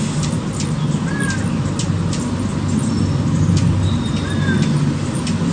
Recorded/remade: recorded